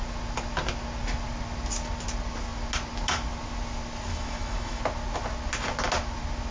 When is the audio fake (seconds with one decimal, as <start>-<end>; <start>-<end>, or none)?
4.1-4.8